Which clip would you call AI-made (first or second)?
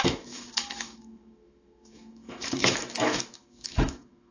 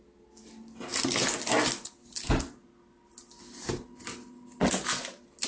first